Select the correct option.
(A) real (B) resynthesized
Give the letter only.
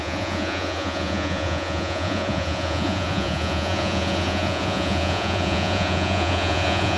B